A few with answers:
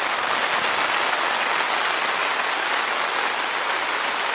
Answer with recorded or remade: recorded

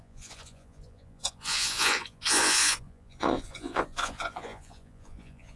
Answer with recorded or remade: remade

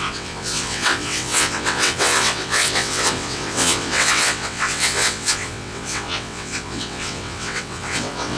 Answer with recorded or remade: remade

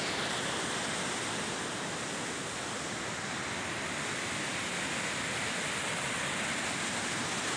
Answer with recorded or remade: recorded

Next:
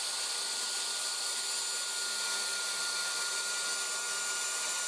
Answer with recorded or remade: recorded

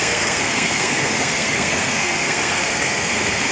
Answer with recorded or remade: remade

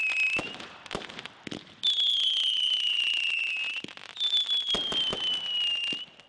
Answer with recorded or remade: recorded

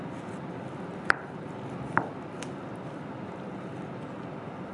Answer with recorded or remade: recorded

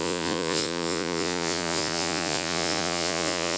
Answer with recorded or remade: remade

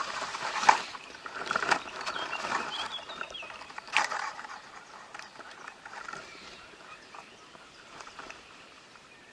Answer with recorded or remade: remade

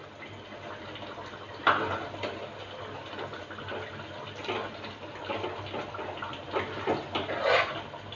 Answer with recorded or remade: recorded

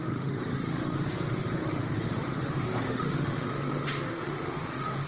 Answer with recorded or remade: remade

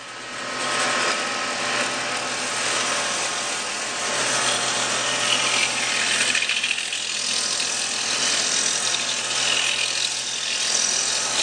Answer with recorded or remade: recorded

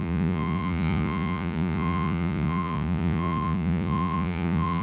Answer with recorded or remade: remade